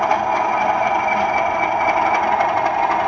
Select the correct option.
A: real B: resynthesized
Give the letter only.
A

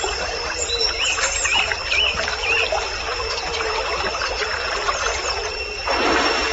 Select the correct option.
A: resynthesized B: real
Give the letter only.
A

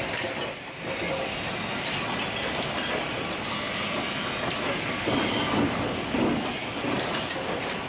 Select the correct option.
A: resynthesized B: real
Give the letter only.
B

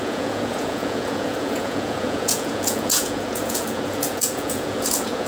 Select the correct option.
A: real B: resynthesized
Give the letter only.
B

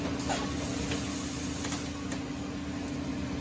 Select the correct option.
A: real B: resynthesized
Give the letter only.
A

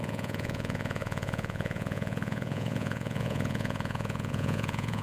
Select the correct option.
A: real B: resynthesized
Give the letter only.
B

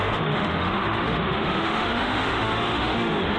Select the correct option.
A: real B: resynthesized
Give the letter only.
B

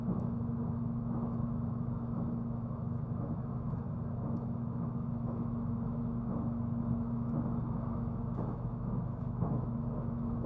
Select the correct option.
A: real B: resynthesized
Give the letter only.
B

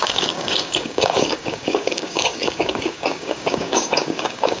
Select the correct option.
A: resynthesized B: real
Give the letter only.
A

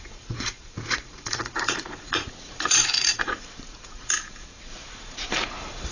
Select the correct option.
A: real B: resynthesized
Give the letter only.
B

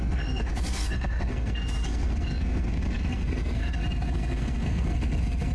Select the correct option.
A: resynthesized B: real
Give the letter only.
A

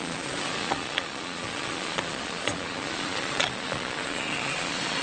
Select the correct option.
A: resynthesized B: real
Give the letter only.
A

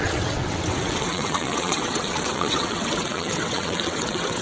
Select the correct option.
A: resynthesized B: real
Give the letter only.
A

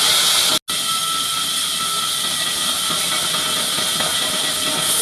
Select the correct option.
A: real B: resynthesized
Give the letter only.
A